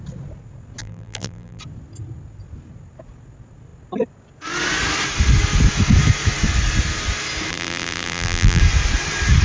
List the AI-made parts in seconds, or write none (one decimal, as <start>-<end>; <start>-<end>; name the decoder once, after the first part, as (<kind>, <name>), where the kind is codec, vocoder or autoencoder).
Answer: 0.8-1.6 (vocoder, BigVGAN v2); 7.5-8.6